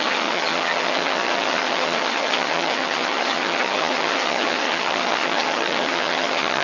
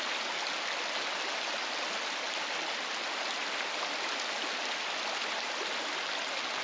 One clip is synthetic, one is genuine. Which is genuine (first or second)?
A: second